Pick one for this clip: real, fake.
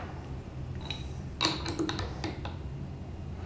real